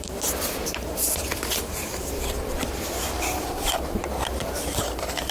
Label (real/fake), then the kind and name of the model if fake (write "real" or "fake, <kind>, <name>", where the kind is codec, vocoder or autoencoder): fake, vocoder, BigVGAN v2